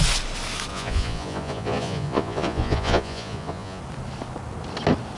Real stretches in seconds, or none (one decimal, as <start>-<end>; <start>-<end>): 0.0-0.7; 3.8-5.2